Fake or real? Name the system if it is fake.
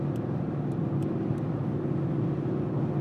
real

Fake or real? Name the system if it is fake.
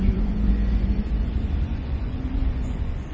fake, vocoder, Vocos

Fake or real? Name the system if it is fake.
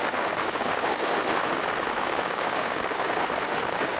fake, autoencoder, DAC-VAE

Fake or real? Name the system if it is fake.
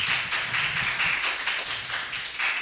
real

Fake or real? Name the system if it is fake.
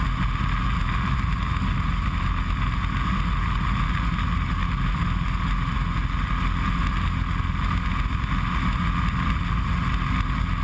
real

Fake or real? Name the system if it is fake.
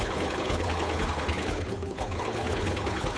fake, codec, HILCodec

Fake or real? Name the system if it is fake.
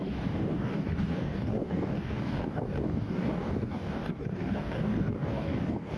fake, codec, DAC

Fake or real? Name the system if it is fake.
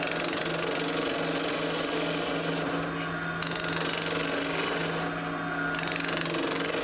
real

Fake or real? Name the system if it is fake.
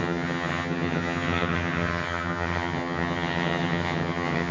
fake, vocoder, HiFi-GAN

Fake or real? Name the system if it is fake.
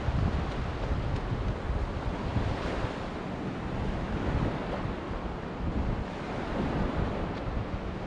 real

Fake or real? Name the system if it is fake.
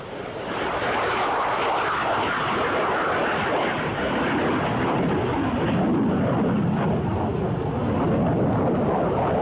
real